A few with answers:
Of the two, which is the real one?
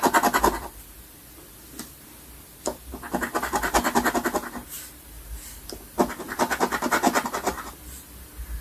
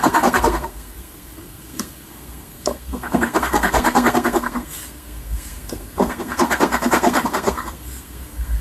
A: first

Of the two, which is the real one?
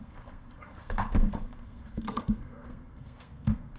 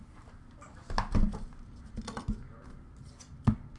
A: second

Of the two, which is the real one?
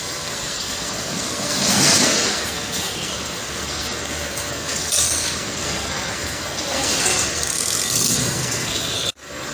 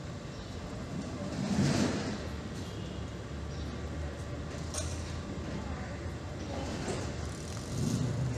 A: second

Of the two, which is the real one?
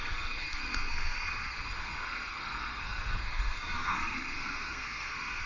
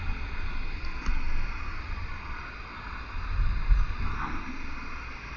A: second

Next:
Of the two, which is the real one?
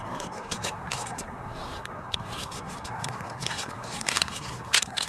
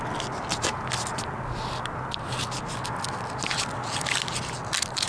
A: second